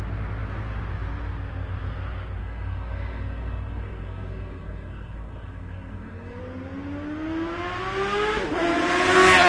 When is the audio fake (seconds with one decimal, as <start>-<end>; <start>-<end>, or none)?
2.4-6.4